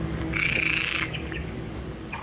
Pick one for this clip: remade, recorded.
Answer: remade